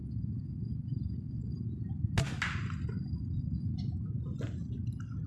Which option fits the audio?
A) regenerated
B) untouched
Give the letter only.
B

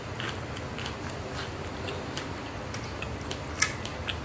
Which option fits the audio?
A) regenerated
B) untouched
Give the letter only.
B